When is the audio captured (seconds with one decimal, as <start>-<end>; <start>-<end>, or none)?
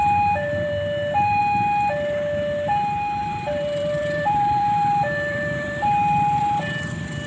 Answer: 1.4-3.2; 6.4-7.3